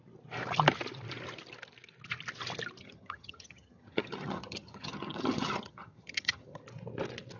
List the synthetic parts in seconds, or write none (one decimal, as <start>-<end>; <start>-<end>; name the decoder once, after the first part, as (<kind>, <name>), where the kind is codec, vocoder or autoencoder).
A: 2.8-6.6 (vocoder, HiFi-GAN)